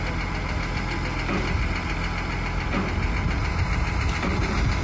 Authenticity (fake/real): real